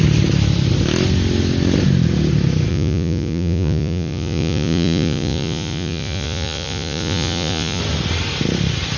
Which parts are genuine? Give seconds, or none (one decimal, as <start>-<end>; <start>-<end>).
0.0-2.7; 7.8-9.0